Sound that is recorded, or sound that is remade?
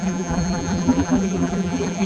remade